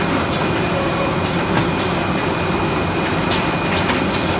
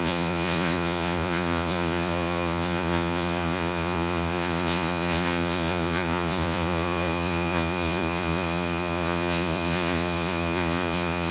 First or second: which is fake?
second